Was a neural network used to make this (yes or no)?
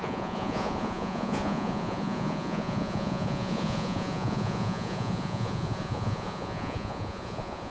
yes